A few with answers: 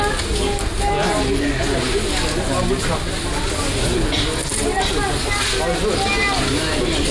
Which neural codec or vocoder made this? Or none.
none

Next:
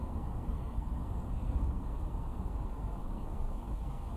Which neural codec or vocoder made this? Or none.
codec, SNAC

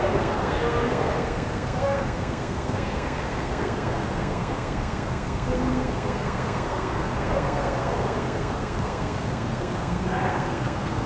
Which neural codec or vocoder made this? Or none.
codec, SNAC